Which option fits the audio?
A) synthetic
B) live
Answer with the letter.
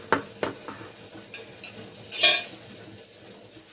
B